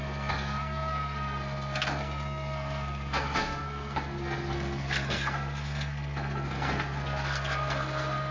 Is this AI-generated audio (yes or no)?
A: yes